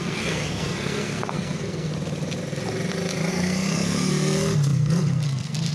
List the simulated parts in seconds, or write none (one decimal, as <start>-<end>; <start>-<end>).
0.0-1.9; 3.3-5.7